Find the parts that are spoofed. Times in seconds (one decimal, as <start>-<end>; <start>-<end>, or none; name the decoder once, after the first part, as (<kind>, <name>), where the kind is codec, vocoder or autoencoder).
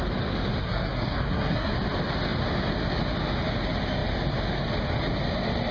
0.6-1.7 (codec, SNAC)